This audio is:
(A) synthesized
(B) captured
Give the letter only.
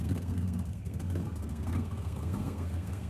A